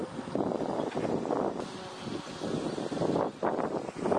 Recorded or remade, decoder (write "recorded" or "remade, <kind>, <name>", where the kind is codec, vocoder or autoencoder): recorded